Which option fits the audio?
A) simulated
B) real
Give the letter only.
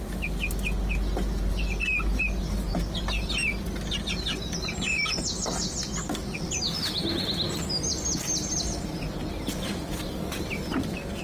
B